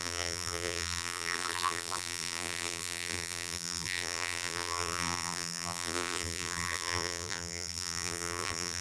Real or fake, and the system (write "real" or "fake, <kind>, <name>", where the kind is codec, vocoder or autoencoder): fake, vocoder, BigVGAN v2